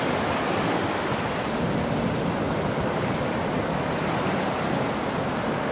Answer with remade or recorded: recorded